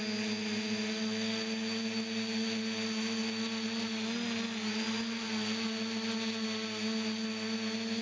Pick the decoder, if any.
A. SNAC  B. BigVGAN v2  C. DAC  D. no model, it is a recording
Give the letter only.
D